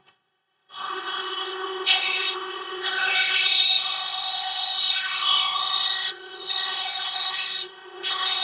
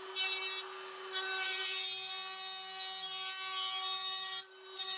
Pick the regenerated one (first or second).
first